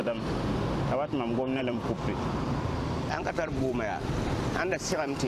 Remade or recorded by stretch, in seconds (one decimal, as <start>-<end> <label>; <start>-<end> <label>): 0.0-1.6 recorded; 1.6-5.3 remade